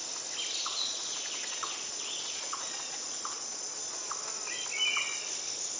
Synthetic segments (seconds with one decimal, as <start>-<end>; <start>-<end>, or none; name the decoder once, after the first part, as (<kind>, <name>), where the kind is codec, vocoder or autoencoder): 0.6-4.1 (vocoder, Vocos)